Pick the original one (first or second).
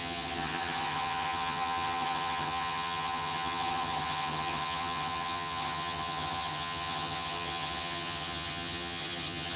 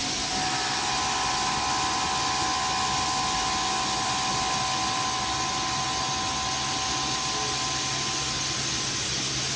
second